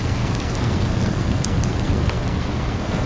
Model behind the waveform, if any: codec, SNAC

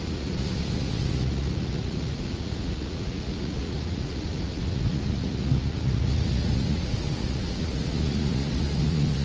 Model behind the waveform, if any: vocoder, Vocos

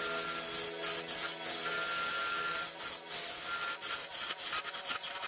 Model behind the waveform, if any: none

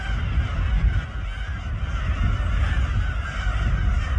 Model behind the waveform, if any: none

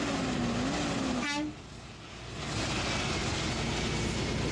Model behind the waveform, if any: none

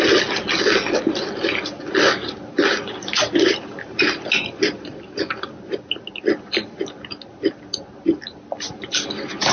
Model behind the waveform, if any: none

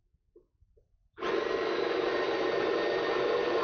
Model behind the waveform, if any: none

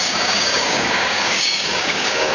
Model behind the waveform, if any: codec, DAC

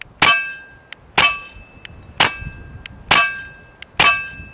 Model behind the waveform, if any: none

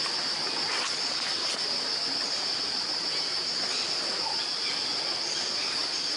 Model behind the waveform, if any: none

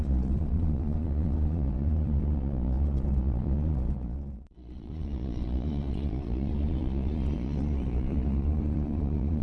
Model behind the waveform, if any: vocoder, Vocos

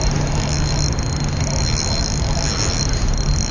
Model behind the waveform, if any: none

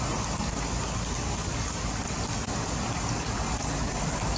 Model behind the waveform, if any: none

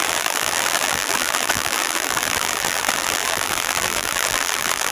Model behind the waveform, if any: vocoder, BigVGAN v2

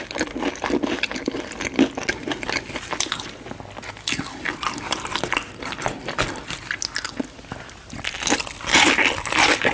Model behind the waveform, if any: none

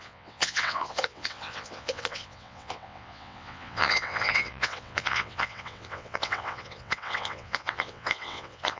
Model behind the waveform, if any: vocoder, WaveNeXt